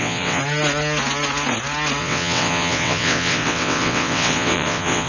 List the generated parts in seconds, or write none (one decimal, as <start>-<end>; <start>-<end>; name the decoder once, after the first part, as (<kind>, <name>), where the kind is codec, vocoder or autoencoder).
0.0-0.4 (vocoder, WaveNeXt); 2.0-5.1